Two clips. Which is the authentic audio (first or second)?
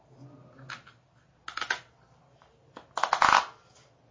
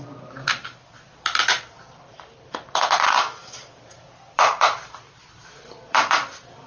first